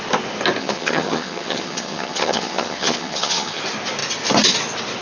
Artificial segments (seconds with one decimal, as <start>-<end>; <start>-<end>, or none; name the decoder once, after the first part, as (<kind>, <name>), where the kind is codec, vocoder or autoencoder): 0.6-3.6 (vocoder, HiFi-GAN)